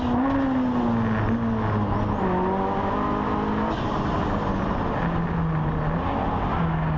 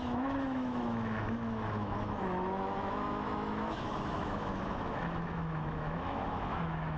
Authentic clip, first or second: first